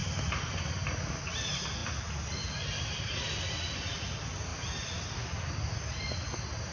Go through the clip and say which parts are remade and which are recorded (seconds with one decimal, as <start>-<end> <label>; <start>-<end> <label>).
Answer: 0.0-6.7 recorded